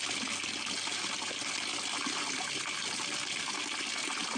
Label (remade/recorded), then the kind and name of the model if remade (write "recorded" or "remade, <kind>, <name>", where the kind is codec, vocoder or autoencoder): recorded